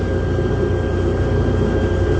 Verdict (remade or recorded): recorded